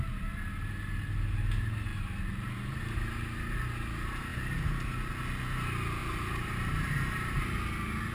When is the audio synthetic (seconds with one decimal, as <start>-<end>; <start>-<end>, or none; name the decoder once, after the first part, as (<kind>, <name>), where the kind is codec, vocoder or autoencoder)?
1.9-2.8 (vocoder, BigVGAN v2); 6.0-7.3